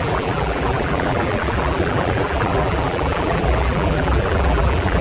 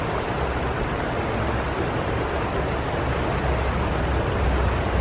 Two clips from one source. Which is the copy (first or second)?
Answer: first